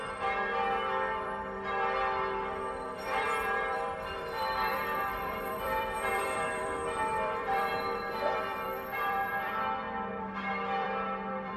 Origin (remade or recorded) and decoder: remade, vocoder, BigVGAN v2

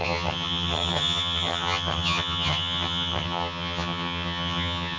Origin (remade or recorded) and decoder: remade, vocoder, HiFi-GAN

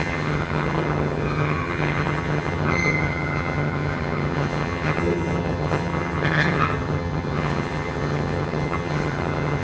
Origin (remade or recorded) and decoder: remade, vocoder, HiFi-GAN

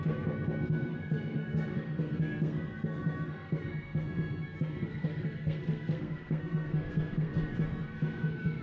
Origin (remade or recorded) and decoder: remade, codec, SNAC